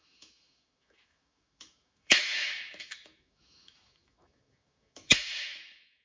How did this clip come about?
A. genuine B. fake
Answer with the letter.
B